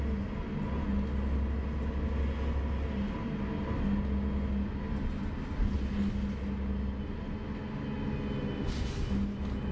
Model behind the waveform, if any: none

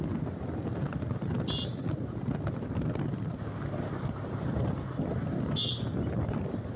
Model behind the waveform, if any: none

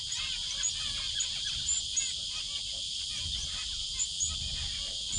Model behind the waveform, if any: none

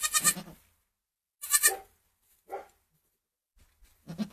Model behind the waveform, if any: none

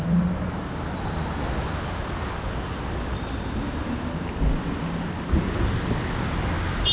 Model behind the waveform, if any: none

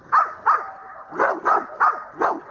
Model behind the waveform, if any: none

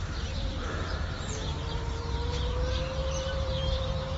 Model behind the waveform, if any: vocoder, BigVGAN v2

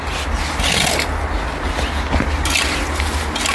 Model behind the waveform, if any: none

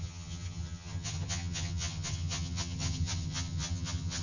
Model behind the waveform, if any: vocoder, HiFi-GAN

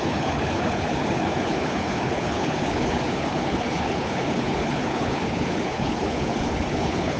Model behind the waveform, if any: codec, HILCodec